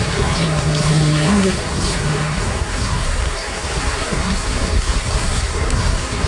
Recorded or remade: remade